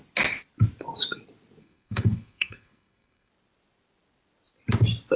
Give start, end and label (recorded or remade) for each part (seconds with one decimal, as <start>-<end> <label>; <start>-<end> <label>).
0.0-1.6 recorded; 1.6-3.3 remade; 3.3-5.2 recorded